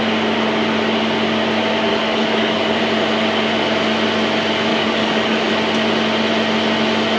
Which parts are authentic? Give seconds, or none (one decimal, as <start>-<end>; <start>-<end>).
0.0-1.9; 2.8-4.7; 5.5-7.2